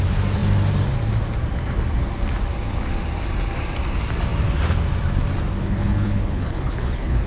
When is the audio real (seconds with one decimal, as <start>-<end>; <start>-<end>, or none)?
0.0-5.6